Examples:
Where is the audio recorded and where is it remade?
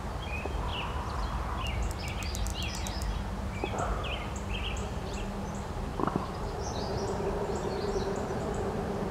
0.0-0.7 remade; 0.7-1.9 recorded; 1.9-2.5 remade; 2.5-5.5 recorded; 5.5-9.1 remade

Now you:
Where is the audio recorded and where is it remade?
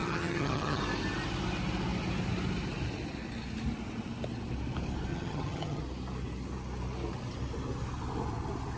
0.0-0.8 remade; 0.8-5.1 recorded; 5.1-5.8 remade; 5.8-8.8 recorded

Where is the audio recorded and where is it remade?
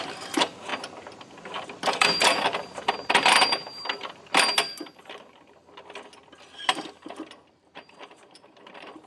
0.0-5.6 remade; 5.6-7.5 recorded; 7.5-9.1 remade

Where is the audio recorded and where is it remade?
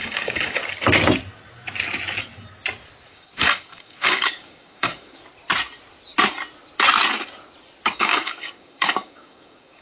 0.0-0.6 remade; 0.6-3.1 recorded; 3.1-5.2 remade; 5.2-8.0 recorded; 8.0-9.8 remade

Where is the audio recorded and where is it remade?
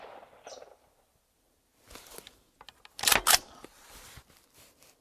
0.0-1.7 remade; 1.7-5.0 recorded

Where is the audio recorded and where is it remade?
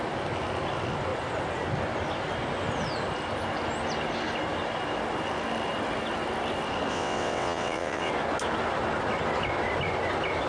0.0-6.9 recorded; 6.9-8.1 remade; 8.1-10.5 recorded